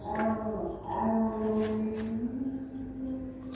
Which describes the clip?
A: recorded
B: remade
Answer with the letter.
A